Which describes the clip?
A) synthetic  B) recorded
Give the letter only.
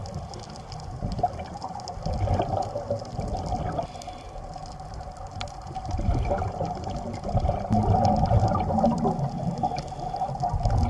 B